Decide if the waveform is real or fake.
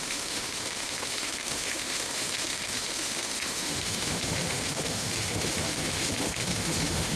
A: fake